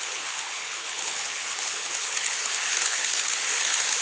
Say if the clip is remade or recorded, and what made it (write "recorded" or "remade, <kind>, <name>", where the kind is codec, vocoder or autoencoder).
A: remade, codec, HILCodec